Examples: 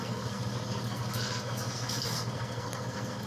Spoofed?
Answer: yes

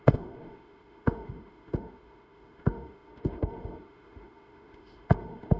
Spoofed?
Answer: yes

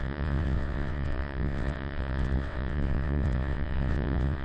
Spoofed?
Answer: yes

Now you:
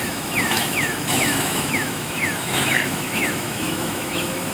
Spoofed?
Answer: yes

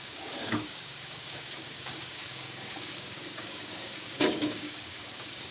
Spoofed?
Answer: yes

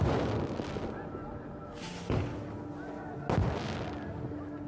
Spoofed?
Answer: no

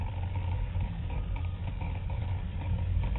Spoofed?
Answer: yes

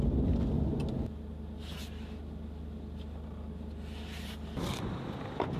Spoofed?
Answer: no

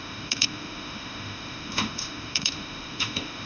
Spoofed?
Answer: yes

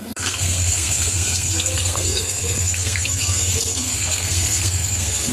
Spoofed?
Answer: yes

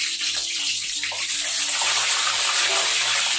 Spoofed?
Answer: no